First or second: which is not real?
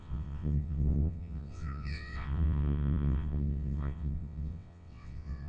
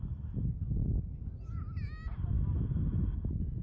first